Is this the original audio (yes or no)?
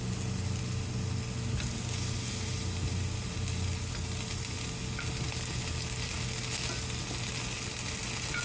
yes